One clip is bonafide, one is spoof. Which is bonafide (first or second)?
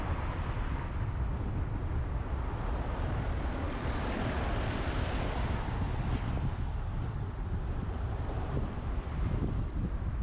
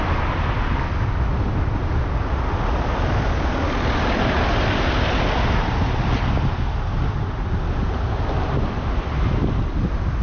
second